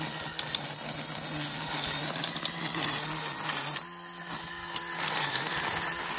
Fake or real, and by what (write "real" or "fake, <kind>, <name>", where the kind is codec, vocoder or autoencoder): real